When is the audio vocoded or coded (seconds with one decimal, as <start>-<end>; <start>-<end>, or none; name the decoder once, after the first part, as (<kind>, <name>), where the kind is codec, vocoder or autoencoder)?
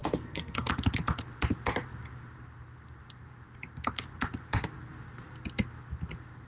0.0-0.7 (codec, SNAC)